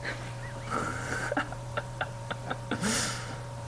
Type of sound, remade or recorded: remade